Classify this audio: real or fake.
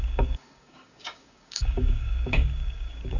fake